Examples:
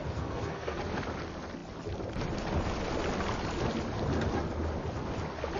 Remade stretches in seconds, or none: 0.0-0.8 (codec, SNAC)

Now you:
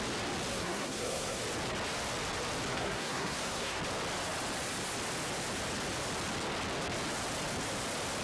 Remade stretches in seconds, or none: 0.5-1.4 (codec, SNAC); 2.7-3.8

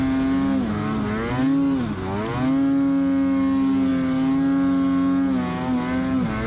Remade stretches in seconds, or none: none

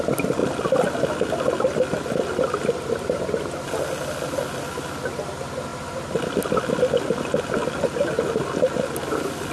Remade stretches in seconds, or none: none